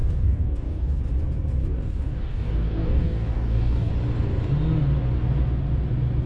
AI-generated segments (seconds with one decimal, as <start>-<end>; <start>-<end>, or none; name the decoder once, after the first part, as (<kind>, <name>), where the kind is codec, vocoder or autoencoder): 0.0-1.0 (codec, DAC); 1.6-3.9